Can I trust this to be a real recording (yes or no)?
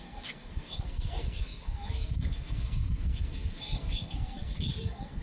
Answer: no